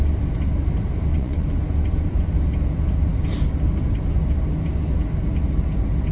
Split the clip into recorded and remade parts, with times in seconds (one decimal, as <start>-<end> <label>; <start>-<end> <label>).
0.0-1.1 recorded; 1.1-2.3 remade; 2.3-6.1 recorded